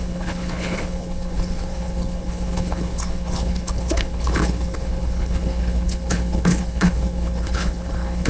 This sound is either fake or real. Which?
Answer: fake